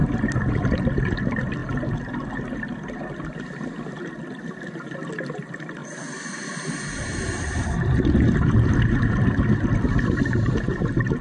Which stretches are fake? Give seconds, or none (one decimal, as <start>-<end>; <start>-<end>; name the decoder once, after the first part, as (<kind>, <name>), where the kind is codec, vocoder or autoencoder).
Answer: none

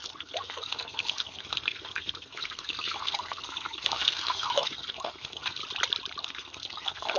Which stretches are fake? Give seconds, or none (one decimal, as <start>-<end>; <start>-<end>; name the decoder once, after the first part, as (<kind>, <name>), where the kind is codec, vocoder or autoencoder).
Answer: 0.0-5.6 (codec, SNAC); 6.2-7.2

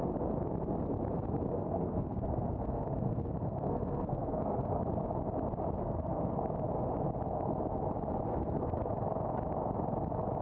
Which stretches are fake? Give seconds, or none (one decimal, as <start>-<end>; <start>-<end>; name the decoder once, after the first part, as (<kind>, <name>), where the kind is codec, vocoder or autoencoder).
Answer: 1.5-4.8 (codec, SNAC); 5.8-6.4; 8.3-8.9

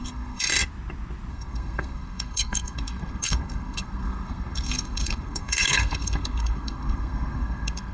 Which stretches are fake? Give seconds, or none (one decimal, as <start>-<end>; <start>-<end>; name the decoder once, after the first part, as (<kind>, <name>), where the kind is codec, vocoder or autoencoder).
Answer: 0.0-0.5 (codec, SNAC); 1.3-7.9

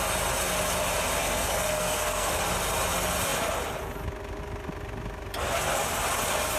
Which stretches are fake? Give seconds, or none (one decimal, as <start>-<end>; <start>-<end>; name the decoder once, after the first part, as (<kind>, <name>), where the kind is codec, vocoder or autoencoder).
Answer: 1.2-2.4 (codec, SNAC)

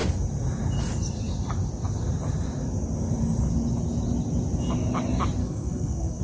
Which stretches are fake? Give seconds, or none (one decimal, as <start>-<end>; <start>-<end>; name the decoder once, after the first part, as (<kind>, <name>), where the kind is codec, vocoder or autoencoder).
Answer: 5.4-6.2 (codec, SNAC)

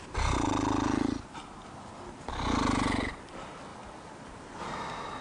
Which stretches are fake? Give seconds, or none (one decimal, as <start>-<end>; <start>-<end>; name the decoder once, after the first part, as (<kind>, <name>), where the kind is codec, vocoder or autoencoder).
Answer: none